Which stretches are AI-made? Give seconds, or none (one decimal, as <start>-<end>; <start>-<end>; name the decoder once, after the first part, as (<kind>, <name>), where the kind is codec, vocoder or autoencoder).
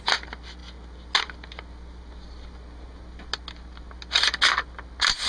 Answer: none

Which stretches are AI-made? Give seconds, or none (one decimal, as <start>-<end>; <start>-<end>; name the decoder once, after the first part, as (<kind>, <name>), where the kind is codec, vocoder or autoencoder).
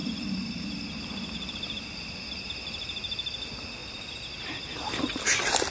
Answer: 0.0-1.3 (vocoder, BigVGAN v2)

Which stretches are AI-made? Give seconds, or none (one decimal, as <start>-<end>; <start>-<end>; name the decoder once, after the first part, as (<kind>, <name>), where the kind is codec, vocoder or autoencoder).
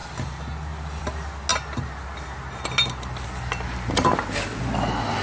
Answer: none